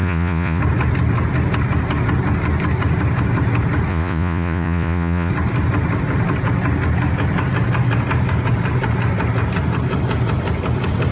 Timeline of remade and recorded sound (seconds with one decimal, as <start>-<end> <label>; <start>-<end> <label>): 0.0-0.6 remade; 0.6-3.9 recorded; 3.9-5.3 remade; 5.3-11.1 recorded